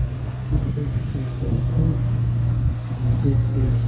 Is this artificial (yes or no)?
yes